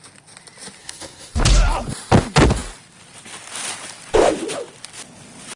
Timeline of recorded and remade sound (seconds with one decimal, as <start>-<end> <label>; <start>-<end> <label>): 0.0-0.8 recorded; 0.8-1.3 remade; 1.3-5.6 recorded